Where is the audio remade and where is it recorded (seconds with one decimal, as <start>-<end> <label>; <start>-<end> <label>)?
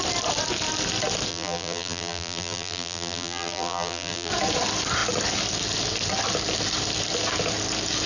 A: 0.0-1.3 recorded; 1.3-4.3 remade; 4.3-8.1 recorded